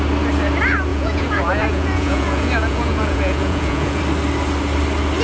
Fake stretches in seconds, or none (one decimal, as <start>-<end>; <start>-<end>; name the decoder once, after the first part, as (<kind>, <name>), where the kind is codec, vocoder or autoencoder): 0.9-4.0 (vocoder, Vocos)

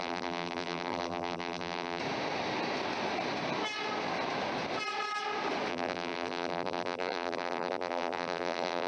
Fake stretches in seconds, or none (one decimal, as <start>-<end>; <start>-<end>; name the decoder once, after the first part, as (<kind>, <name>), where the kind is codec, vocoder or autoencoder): 0.0-2.0 (vocoder, BigVGAN v2); 5.7-8.9